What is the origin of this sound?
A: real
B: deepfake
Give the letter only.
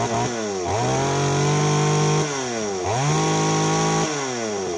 A